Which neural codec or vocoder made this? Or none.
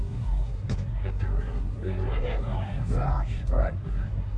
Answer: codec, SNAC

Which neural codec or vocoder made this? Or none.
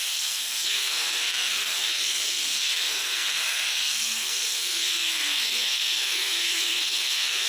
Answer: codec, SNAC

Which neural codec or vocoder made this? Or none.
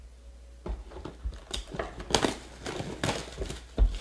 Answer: none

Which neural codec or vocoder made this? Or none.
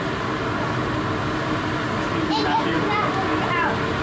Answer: none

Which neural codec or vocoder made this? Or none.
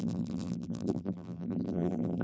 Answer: vocoder, BigVGAN v2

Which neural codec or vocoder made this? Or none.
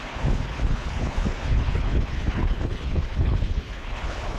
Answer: codec, HILCodec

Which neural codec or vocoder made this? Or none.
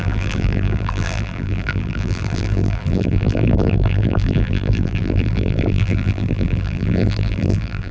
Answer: vocoder, BigVGAN v2